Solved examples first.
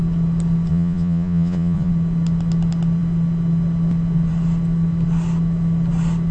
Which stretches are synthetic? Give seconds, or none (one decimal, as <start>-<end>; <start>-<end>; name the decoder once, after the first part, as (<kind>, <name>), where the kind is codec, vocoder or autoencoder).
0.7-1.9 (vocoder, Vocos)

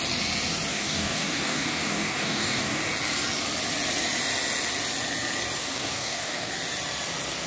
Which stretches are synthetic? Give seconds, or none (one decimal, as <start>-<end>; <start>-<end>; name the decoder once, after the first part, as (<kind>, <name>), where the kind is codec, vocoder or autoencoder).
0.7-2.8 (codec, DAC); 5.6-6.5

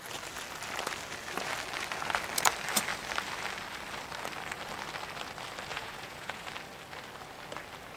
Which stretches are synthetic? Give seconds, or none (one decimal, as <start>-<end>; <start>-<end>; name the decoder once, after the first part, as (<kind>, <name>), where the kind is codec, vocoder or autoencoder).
5.7-6.5 (vocoder, Vocos)

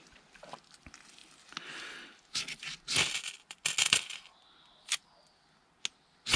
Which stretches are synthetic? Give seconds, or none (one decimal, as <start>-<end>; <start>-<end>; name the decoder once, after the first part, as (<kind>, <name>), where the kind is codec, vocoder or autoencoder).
none

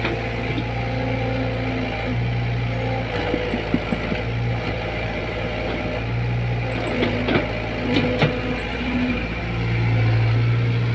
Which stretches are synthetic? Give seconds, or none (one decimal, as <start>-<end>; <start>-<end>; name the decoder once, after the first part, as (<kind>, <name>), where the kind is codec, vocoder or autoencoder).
4.5-5.8 (vocoder, BigVGAN v2); 8.7-9.4